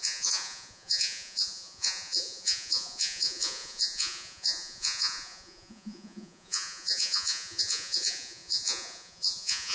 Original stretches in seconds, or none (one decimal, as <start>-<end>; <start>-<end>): none